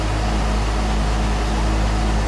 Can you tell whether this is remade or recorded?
recorded